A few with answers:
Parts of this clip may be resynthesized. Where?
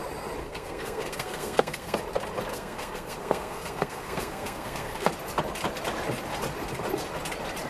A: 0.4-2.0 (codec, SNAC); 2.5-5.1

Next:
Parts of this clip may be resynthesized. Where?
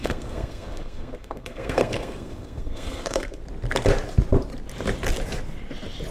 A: 0.0-3.4 (codec, SNAC)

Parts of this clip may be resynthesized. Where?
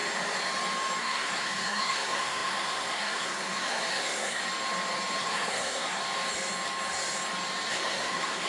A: 1.0-4.4 (codec, SNAC); 5.2-6.0; 7.7-8.5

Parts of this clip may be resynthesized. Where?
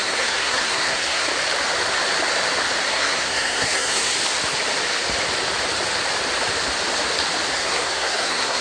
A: 0.0-1.3 (codec, SNAC); 2.9-4.1; 7.5-8.6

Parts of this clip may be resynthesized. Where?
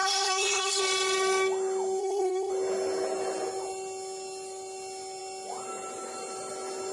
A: 0.0-0.8 (codec, SNAC); 2.0-2.5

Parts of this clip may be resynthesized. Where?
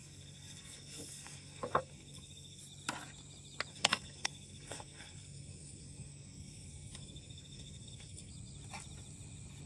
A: 0.0-2.6 (codec, SNAC); 3.7-8.3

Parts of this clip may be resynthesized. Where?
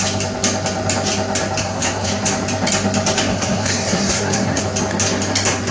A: 1.6-2.1 (codec, SNAC); 3.3-4.6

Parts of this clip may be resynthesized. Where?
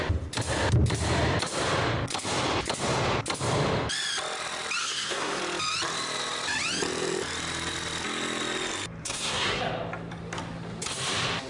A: 4.8-5.4 (codec, SNAC); 9.0-9.6